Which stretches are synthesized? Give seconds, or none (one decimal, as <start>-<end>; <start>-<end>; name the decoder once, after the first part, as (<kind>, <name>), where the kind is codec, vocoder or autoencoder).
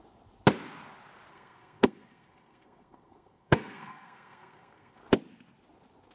1.3-5.0 (codec, SNAC)